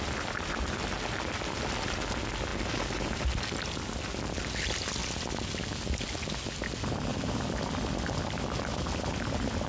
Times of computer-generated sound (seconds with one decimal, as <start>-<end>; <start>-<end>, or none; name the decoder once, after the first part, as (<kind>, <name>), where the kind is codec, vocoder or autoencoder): 5.0-5.6 (vocoder, BigVGAN v2); 7.1-9.7